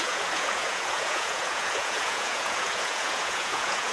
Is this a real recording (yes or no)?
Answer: no